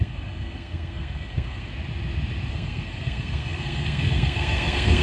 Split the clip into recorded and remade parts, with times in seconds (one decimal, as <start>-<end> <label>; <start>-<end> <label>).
0.0-1.7 remade; 1.7-2.5 recorded; 2.5-5.0 remade